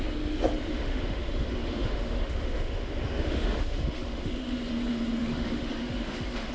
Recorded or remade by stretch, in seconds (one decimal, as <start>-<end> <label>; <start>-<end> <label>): 0.0-0.7 recorded; 0.7-4.6 remade; 4.6-5.2 recorded; 5.2-6.5 remade